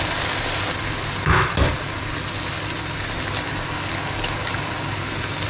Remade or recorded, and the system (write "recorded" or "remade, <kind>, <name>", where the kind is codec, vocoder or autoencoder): recorded